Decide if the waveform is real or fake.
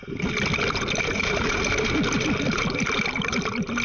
real